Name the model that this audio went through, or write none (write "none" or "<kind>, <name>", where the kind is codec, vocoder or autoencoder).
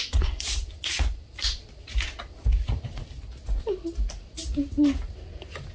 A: none